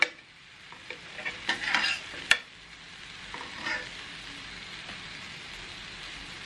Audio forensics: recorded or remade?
recorded